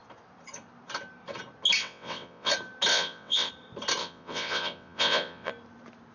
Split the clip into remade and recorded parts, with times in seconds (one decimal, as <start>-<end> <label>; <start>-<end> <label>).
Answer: 0.0-1.8 recorded; 1.8-2.5 remade; 2.5-2.9 recorded; 2.9-3.5 remade; 3.5-4.0 recorded; 4.0-5.5 remade; 5.5-6.1 recorded